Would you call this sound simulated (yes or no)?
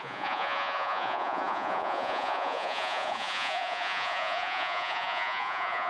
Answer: yes